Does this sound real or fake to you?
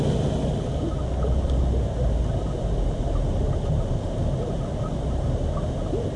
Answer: real